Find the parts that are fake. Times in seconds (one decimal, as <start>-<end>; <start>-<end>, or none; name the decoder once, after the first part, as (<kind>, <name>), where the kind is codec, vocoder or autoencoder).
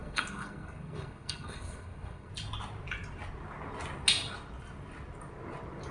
0.0-2.3 (codec, SNAC)